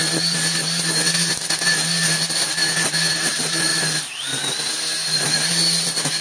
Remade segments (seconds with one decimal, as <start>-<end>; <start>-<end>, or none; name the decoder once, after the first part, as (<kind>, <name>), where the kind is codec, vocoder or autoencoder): none